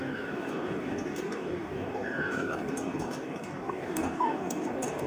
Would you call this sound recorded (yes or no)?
no